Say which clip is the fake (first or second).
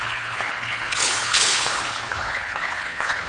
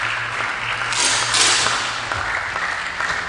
first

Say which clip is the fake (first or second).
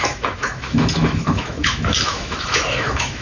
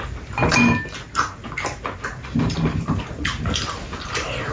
first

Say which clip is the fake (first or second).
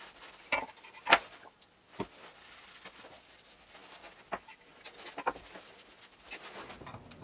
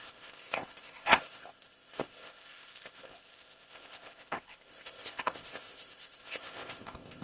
second